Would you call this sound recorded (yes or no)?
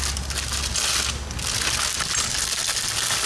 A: yes